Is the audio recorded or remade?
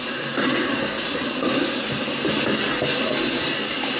recorded